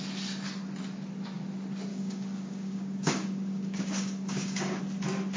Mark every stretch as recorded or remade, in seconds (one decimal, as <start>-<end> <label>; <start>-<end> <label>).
0.0-1.9 recorded; 1.9-4.8 remade; 4.8-5.4 recorded